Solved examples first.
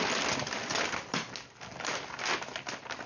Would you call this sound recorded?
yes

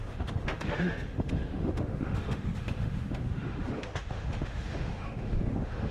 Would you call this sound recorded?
no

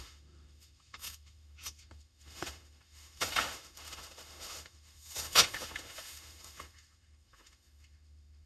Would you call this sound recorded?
no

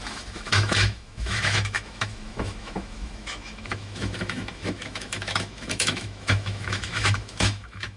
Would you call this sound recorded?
no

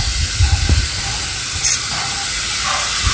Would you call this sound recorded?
yes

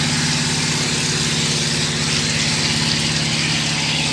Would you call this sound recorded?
yes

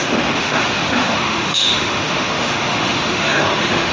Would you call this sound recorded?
no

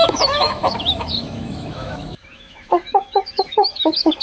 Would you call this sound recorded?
no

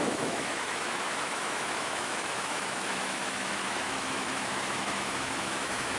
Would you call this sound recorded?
no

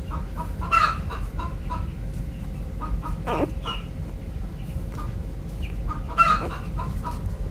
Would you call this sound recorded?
no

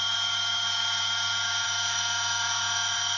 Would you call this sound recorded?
no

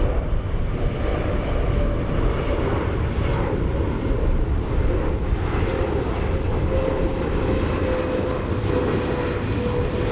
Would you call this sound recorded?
yes